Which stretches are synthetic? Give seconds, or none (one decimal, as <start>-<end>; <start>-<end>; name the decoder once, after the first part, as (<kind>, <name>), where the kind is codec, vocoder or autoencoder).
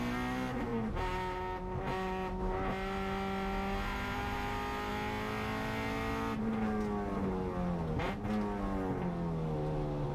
none